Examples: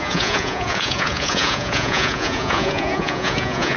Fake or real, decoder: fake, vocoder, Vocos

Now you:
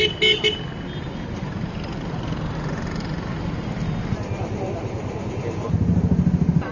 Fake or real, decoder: real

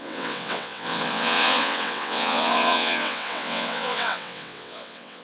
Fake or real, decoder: fake, vocoder, WaveNeXt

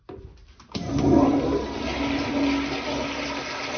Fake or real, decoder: real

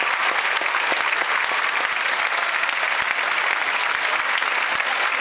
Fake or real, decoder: real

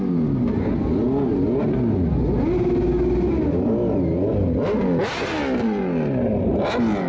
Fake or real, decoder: real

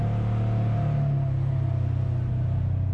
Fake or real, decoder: real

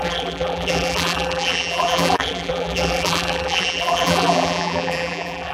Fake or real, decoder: fake, vocoder, BigVGAN v2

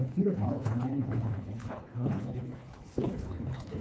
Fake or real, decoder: fake, codec, HILCodec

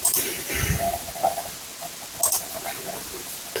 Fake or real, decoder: real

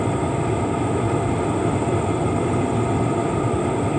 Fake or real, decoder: real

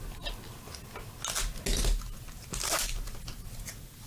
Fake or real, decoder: real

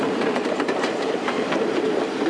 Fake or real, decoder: fake, vocoder, BigVGAN v2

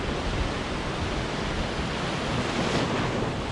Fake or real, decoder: real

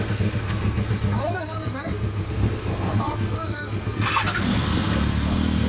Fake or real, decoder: fake, codec, SNAC